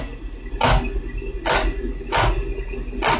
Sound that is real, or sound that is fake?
real